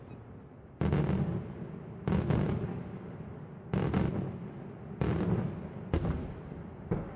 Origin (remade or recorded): recorded